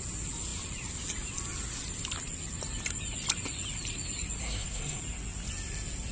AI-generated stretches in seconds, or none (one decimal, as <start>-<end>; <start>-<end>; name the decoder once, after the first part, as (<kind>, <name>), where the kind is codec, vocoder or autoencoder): 4.4-5.0 (codec, SNAC)